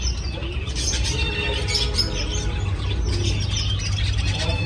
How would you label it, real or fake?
real